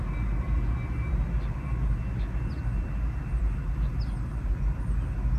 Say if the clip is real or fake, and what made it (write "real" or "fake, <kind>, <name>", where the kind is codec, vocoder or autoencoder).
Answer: real